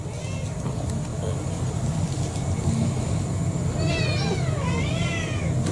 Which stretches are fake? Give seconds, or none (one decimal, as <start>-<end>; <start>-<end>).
none